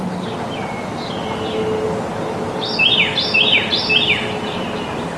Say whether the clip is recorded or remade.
recorded